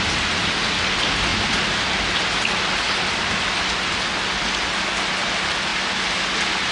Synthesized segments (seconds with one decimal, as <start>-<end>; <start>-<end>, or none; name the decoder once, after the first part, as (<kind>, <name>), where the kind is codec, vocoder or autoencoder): none